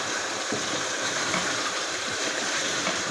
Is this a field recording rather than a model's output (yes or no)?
no